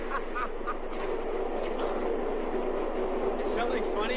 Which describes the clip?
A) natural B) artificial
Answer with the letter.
A